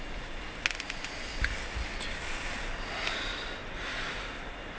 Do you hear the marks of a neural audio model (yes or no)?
no